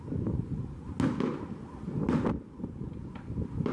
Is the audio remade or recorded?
recorded